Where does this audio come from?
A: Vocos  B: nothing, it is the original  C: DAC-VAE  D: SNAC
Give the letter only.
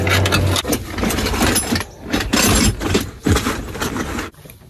B